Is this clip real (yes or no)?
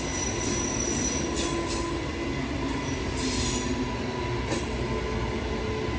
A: yes